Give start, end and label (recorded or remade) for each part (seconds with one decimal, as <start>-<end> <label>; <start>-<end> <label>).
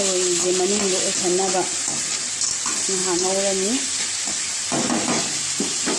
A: 0.0-6.0 recorded